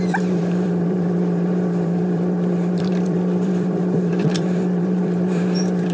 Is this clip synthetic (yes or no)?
yes